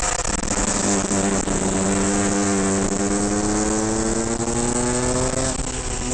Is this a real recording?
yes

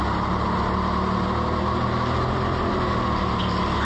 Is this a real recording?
yes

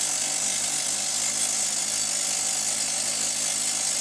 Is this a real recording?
yes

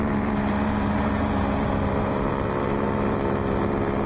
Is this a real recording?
no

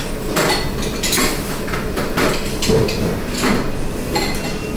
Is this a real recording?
yes